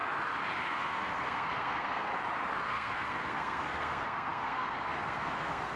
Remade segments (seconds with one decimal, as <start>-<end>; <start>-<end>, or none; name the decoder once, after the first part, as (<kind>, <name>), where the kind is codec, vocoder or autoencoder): 0.6-2.1 (codec, SNAC); 2.6-5.8